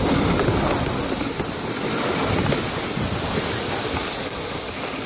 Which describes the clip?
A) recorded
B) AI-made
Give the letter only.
A